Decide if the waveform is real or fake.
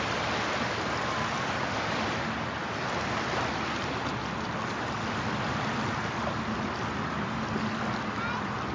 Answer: real